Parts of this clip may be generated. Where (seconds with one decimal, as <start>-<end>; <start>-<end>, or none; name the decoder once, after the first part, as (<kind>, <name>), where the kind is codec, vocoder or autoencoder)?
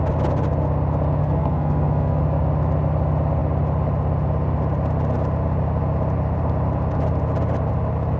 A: 1.2-2.2 (codec, SNAC)